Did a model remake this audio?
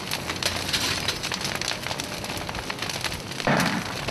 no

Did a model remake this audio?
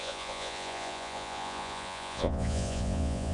yes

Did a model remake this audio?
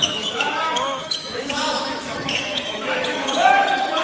yes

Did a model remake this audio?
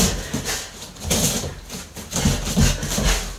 no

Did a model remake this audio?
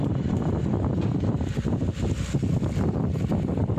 no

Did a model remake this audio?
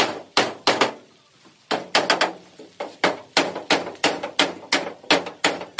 no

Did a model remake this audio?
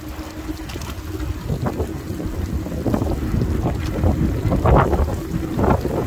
no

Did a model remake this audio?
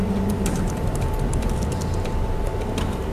yes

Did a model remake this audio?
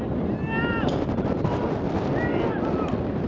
no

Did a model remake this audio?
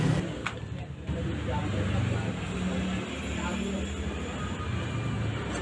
no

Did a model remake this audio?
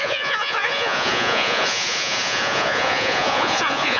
yes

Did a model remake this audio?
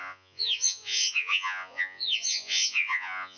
yes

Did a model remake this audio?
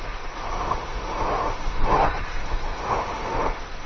yes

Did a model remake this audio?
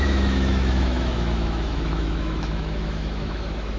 yes